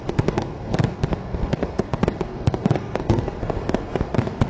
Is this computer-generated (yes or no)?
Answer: yes